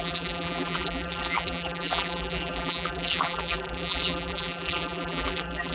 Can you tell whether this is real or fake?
fake